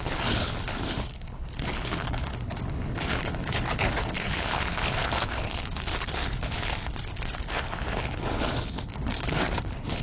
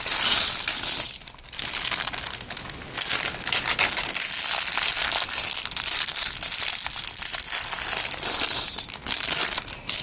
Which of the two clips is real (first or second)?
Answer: second